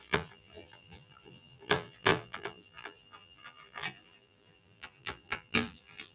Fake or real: fake